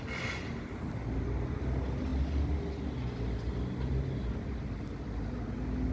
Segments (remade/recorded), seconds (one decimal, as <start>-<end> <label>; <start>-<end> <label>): 0.0-5.9 recorded